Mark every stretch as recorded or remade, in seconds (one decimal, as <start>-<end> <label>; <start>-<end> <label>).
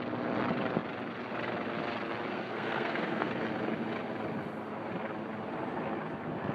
0.0-2.3 recorded; 2.3-3.3 remade; 3.3-6.5 recorded